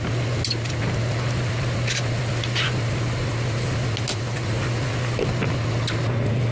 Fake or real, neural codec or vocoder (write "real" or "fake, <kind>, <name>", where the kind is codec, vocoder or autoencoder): real